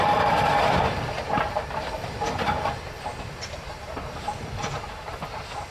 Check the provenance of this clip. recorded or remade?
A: recorded